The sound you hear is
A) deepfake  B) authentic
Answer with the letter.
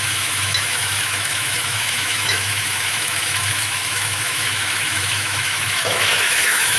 A